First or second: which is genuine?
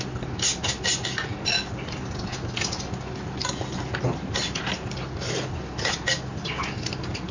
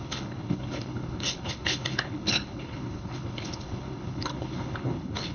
first